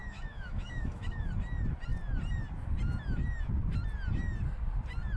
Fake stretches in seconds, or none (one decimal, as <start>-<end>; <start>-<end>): 0.0-1.3